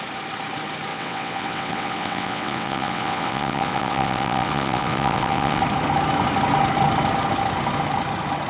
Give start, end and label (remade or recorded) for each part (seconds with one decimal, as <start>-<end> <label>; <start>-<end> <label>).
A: 0.0-0.9 recorded; 0.9-5.6 remade; 5.6-8.5 recorded